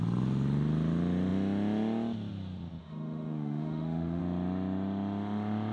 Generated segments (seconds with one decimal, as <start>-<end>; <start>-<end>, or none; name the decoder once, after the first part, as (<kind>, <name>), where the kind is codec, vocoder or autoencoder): 2.8-4.2 (autoencoder, DAC-VAE)